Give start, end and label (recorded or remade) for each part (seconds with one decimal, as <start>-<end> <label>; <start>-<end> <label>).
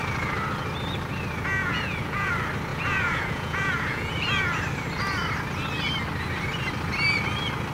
0.0-1.6 recorded; 1.6-2.3 remade; 2.3-2.7 recorded; 2.7-4.6 remade; 4.6-7.7 recorded